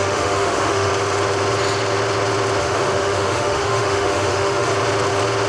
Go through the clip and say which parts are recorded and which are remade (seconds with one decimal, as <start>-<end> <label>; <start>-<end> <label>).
0.0-0.9 remade; 0.9-2.6 recorded; 2.6-4.7 remade; 4.7-5.5 recorded